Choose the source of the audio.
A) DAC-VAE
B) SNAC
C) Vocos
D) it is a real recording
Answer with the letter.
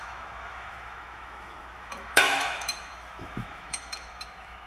A